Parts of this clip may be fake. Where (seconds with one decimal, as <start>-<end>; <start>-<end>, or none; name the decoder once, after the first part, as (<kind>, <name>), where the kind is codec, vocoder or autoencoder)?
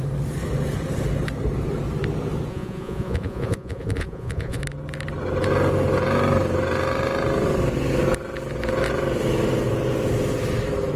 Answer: 2.5-4.6 (vocoder, Vocos)